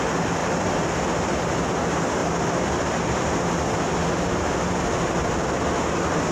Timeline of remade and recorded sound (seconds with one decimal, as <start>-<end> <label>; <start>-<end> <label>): 0.0-6.3 recorded